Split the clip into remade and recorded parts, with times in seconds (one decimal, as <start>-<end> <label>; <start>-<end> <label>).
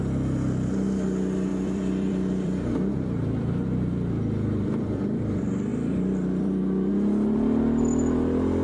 0.0-1.5 recorded; 1.5-4.1 remade; 4.1-5.7 recorded; 5.7-6.9 remade; 6.9-8.6 recorded